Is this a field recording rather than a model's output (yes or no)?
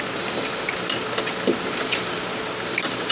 yes